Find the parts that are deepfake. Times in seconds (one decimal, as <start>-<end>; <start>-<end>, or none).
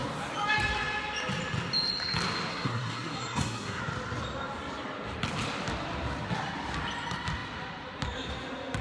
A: 2.5-3.8